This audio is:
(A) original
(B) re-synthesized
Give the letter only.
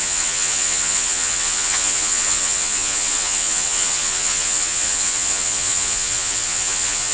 B